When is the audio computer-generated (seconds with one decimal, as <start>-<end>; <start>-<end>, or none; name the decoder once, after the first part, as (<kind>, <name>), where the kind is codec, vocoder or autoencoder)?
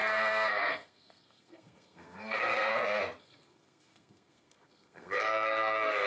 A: 0.0-2.7 (codec, SNAC); 3.2-6.1